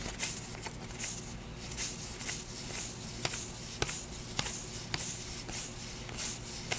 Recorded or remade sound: recorded